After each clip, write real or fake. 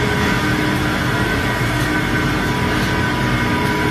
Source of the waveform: real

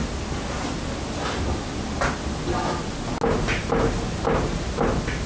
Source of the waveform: real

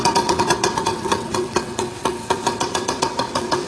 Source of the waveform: fake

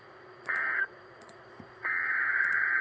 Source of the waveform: fake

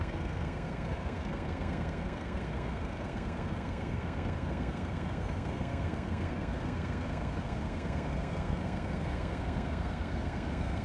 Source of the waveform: fake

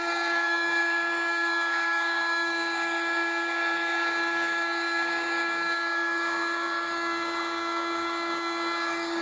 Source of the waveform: fake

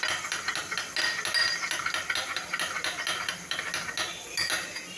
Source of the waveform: real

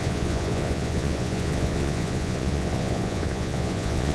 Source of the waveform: fake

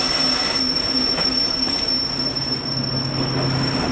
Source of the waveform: real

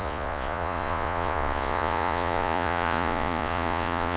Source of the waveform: fake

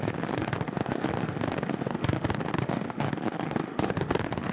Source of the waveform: fake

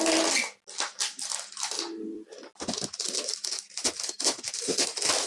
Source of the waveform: real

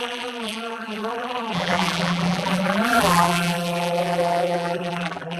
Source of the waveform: fake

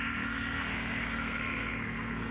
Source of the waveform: fake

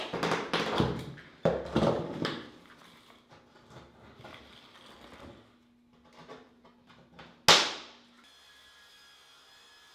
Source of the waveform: real